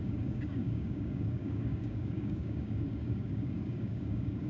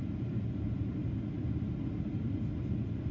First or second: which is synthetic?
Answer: first